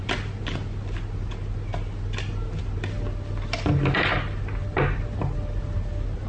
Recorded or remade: recorded